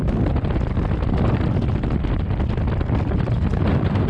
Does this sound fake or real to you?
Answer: real